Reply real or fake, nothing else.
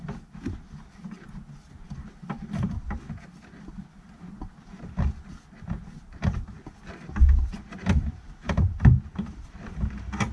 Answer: real